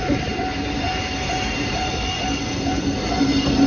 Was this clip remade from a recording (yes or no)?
no